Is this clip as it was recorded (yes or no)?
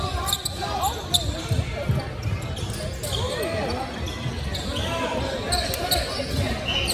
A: yes